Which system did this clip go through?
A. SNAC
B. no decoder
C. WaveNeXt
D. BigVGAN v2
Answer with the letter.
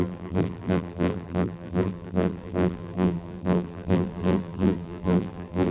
D